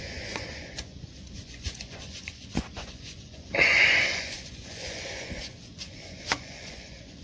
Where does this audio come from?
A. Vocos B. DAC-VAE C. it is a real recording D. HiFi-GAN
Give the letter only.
A